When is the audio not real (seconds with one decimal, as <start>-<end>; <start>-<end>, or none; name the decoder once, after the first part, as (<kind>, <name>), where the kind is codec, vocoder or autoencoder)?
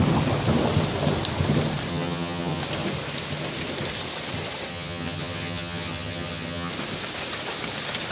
1.9-2.6 (vocoder, HiFi-GAN); 4.7-6.7